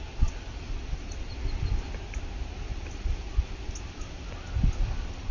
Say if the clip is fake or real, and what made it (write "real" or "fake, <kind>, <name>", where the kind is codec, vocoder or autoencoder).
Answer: real